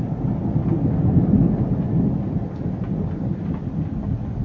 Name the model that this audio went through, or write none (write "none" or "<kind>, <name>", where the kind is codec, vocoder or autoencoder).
none